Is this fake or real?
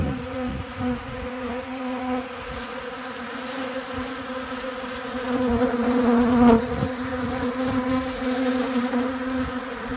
fake